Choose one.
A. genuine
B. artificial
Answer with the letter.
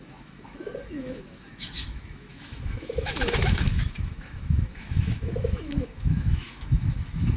B